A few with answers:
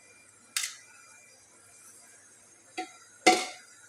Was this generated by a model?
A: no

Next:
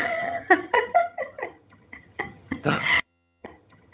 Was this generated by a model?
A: yes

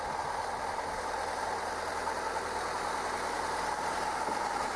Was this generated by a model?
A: no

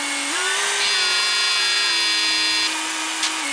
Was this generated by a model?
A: no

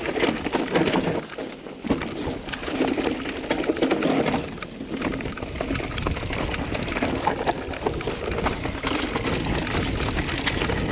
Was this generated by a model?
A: no